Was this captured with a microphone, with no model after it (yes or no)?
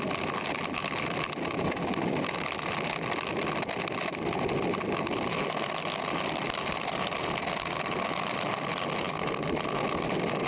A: yes